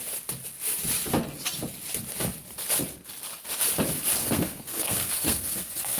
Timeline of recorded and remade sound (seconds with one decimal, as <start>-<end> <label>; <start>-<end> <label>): 0.0-4.2 recorded; 4.2-6.0 remade